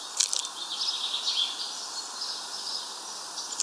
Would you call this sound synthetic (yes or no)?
no